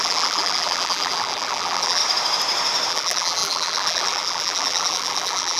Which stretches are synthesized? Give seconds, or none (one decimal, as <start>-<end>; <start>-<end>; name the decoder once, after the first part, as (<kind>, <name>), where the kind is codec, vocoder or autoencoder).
0.0-2.0 (vocoder, BigVGAN v2); 2.9-5.6